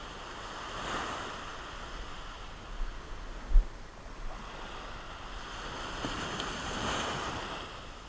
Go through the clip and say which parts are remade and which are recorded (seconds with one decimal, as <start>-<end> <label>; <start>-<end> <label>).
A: 0.0-8.1 recorded